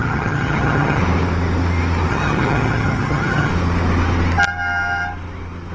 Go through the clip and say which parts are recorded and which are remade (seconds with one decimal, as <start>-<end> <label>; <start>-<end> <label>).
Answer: 0.0-1.0 remade; 1.0-2.1 recorded; 2.1-3.5 remade; 3.5-5.7 recorded